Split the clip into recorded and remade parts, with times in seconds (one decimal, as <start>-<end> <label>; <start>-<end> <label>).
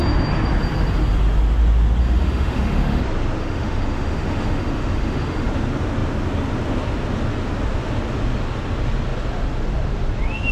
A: 0.0-2.0 recorded; 2.0-3.0 remade; 3.0-3.4 recorded; 3.4-5.5 remade; 5.5-10.5 recorded